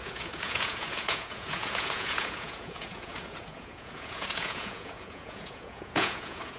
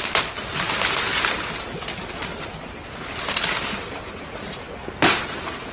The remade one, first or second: first